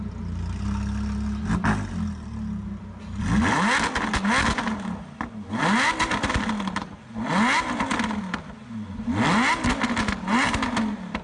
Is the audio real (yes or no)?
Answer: yes